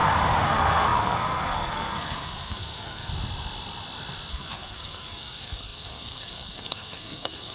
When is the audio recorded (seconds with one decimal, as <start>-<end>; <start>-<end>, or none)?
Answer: 0.0-0.5; 3.1-4.3